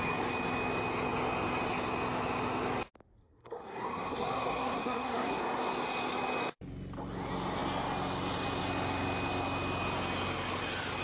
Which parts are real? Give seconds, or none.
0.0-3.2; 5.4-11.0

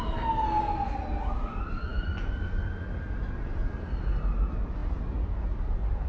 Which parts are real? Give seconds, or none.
0.0-6.1